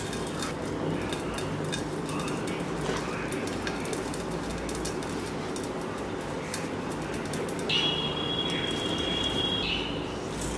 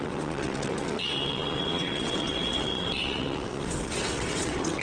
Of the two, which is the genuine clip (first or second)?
first